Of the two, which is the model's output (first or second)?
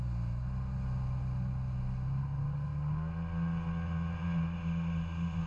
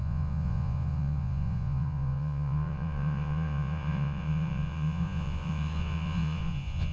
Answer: second